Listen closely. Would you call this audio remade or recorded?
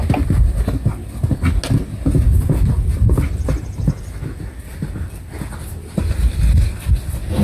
recorded